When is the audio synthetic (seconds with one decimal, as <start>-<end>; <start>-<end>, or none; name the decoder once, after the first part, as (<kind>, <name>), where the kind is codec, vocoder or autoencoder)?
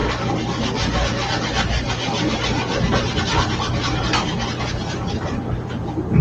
none